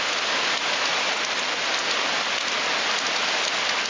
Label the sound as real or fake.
real